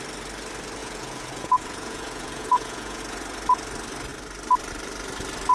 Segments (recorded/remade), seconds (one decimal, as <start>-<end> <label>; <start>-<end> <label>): 0.0-0.8 recorded; 0.8-3.0 remade; 3.0-5.5 recorded